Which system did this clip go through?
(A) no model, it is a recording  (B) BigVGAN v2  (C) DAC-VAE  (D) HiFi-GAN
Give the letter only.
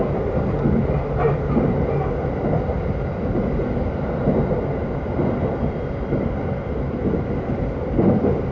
A